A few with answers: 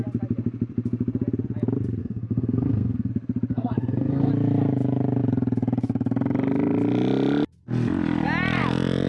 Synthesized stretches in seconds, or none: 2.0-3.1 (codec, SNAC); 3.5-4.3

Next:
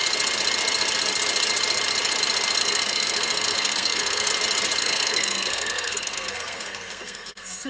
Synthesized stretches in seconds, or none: 2.6-4.3 (codec, SNAC); 4.8-7.7

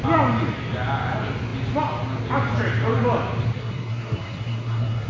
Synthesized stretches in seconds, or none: 3.6-5.1 (codec, SNAC)